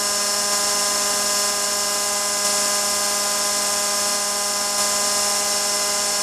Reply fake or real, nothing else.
real